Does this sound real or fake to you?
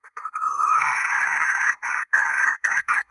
fake